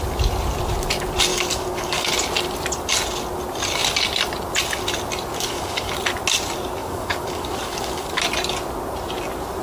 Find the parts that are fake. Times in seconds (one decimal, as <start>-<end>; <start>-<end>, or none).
1.3-2.1; 5.3-5.9; 6.8-8.2